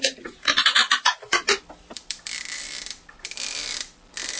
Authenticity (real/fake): fake